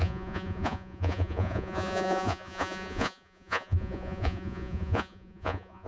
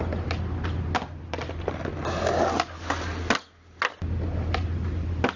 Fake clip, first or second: first